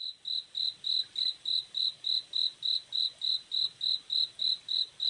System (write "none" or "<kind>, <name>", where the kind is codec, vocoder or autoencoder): none